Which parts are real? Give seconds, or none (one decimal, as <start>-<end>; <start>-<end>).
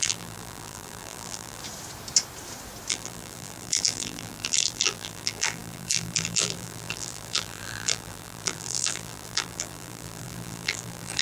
1.6-2.9